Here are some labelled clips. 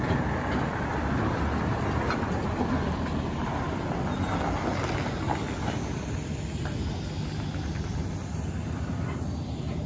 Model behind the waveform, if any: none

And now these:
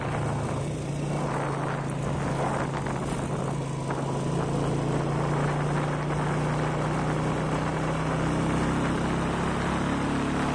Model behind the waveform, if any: none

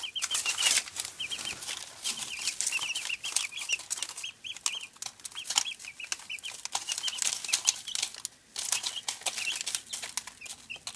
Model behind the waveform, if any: none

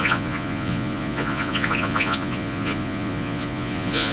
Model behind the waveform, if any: vocoder, Vocos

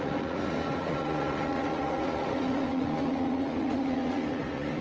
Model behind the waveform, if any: vocoder, Vocos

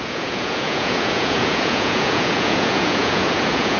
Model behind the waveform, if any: vocoder, Vocos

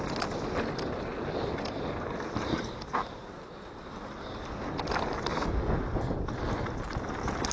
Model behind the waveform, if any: none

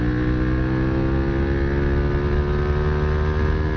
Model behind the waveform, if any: none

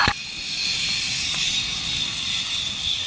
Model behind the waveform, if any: none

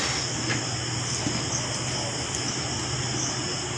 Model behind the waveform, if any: none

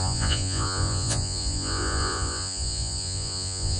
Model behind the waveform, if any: vocoder, Vocos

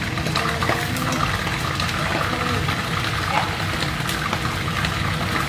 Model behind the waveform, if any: none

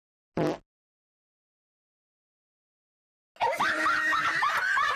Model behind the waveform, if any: none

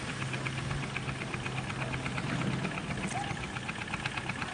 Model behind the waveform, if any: none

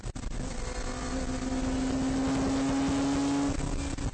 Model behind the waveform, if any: none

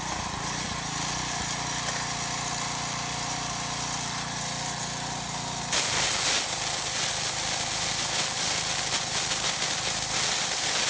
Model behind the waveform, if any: none